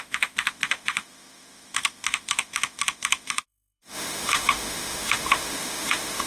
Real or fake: fake